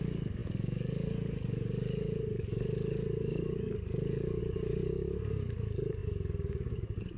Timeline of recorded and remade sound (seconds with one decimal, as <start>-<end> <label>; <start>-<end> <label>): 0.0-7.2 remade